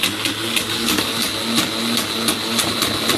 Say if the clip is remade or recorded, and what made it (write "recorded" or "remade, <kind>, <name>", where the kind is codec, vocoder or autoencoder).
recorded